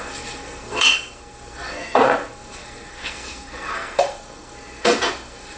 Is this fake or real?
fake